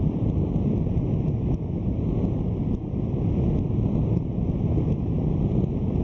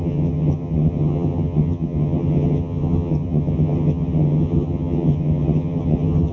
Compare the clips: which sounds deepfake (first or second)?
second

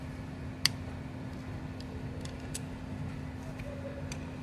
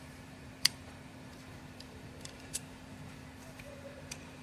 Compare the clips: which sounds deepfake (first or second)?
second